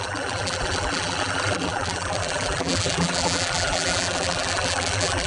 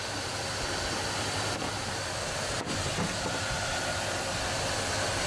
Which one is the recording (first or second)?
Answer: second